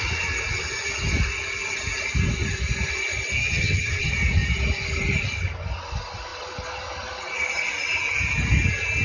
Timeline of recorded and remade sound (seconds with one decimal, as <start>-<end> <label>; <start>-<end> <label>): 0.0-3.4 recorded; 3.4-4.1 remade; 4.1-9.0 recorded